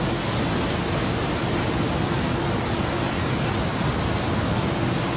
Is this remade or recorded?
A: recorded